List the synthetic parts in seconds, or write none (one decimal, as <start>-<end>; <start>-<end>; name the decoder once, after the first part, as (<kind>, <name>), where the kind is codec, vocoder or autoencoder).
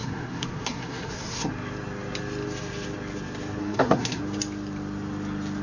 0.0-1.5 (codec, SNAC); 3.6-4.2